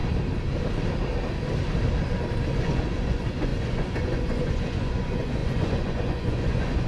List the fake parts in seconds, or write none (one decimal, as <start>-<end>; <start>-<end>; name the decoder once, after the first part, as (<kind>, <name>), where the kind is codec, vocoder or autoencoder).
2.6-6.9 (vocoder, Vocos)